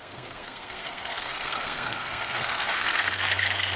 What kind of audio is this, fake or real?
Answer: fake